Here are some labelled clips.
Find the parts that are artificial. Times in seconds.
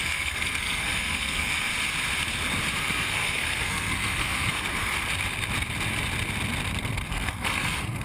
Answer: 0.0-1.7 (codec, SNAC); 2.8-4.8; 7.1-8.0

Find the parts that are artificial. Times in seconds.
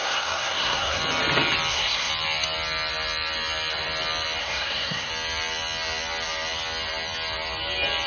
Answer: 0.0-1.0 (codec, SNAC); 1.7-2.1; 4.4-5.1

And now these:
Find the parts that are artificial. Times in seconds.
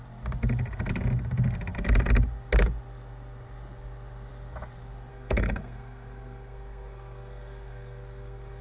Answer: 5.1-8.6 (codec, SNAC)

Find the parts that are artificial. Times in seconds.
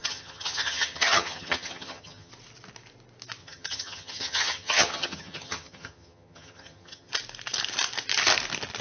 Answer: 0.0-2.3 (vocoder, HiFi-GAN); 3.4-7.1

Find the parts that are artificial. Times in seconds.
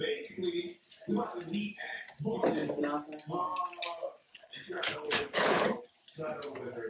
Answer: 4.3-5.8 (codec, HILCodec)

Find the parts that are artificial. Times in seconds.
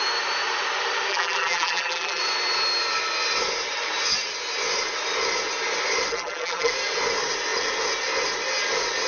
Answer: 1.1-2.2 (vocoder, BigVGAN v2); 6.1-6.7